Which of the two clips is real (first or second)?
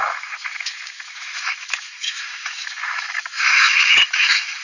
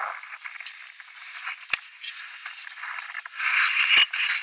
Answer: second